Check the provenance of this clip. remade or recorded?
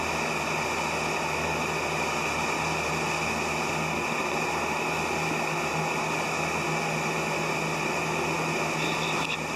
recorded